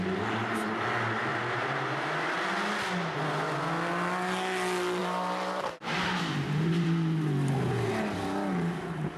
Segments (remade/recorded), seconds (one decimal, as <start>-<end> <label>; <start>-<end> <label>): 0.0-1.3 recorded; 1.3-2.1 remade; 2.1-5.0 recorded; 5.0-7.5 remade; 7.5-9.2 recorded